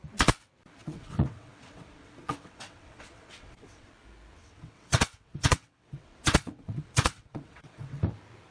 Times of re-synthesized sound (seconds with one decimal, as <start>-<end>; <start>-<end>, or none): 0.8-3.9; 4.4-8.0